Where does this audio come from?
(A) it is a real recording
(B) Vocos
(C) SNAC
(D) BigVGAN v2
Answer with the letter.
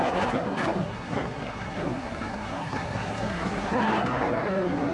C